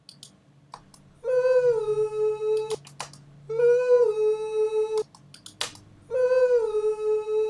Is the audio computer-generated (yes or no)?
no